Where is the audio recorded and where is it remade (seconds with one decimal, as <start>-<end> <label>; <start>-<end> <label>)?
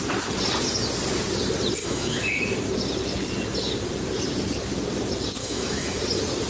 0.0-1.8 recorded; 1.8-2.4 remade; 2.4-5.4 recorded; 5.4-6.0 remade; 6.0-6.5 recorded